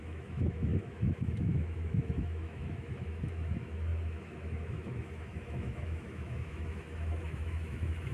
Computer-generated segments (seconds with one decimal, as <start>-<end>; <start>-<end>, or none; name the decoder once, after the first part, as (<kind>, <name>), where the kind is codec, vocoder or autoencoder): 0.0-8.1 (autoencoder, DAC-VAE)